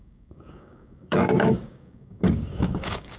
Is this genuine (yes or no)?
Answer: no